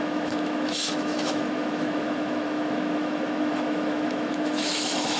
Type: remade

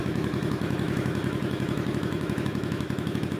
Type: remade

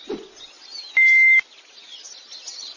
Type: recorded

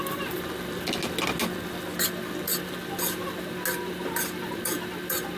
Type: recorded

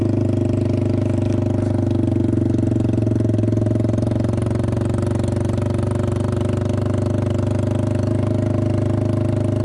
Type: recorded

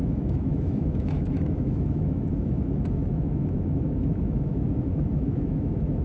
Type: remade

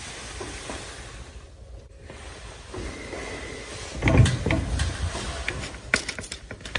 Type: recorded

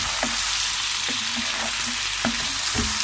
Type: recorded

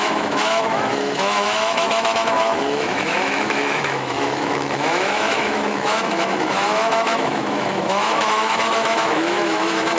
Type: remade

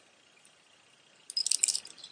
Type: recorded